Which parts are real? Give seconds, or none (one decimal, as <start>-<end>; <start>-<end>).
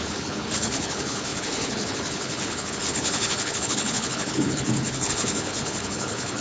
none